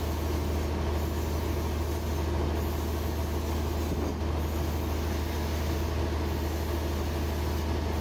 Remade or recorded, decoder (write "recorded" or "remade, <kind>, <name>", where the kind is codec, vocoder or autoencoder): recorded